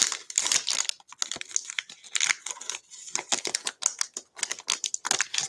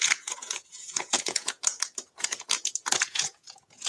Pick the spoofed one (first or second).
second